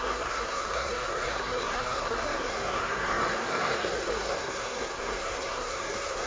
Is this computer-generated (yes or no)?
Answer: yes